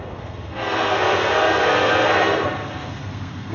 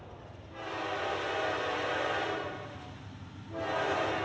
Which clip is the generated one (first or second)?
first